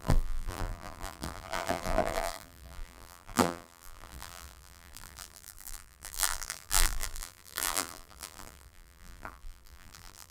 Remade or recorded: remade